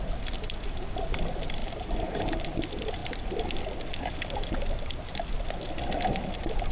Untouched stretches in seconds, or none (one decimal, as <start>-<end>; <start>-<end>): 0.0-1.6; 2.4-6.7